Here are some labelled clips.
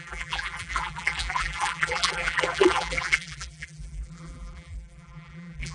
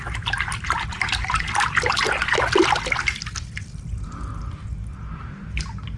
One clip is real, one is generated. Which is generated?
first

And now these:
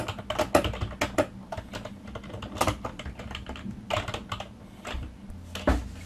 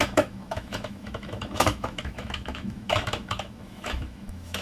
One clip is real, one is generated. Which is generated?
second